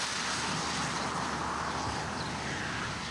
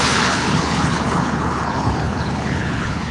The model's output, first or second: second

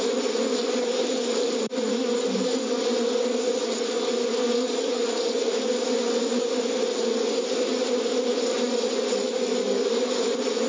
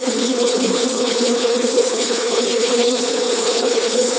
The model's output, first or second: second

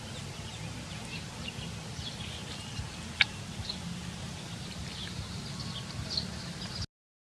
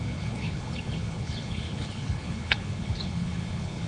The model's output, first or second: second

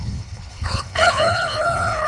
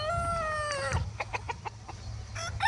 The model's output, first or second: first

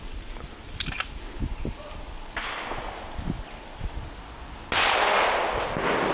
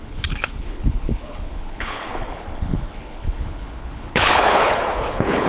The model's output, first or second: second